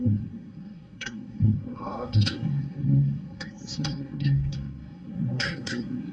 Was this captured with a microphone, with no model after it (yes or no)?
no